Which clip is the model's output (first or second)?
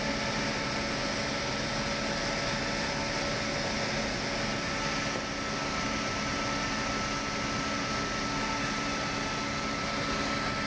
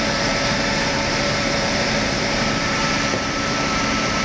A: second